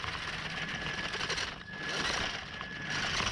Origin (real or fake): real